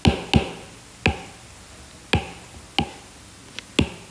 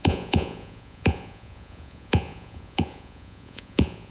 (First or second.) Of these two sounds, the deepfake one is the second